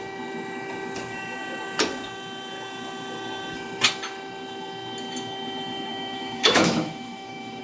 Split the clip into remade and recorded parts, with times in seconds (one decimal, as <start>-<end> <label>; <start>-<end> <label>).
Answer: 0.0-5.9 recorded; 5.9-7.6 remade